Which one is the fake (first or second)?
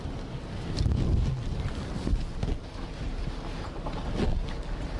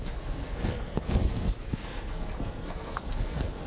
second